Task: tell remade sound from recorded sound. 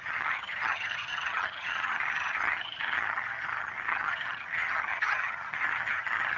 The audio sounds remade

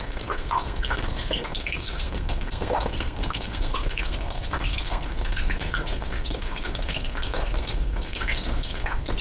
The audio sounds remade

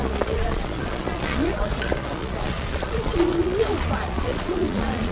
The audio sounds remade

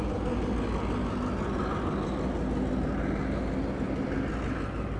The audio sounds recorded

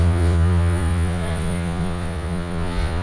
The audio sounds remade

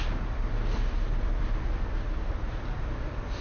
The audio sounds remade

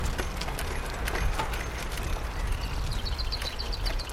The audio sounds recorded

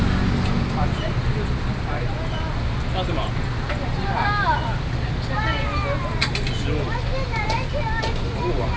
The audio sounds recorded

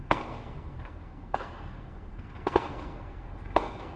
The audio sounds remade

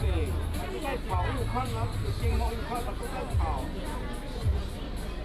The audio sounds recorded